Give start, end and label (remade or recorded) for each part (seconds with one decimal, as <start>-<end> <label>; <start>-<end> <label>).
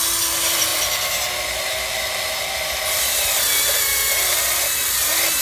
0.0-5.4 recorded